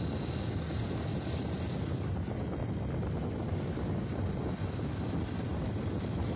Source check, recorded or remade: recorded